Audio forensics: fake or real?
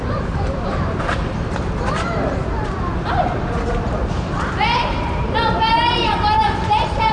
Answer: fake